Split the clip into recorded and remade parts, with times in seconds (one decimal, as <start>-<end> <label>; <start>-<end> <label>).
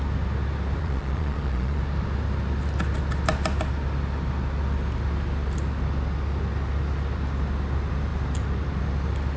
0.0-0.8 recorded; 0.8-1.8 remade; 1.8-9.4 recorded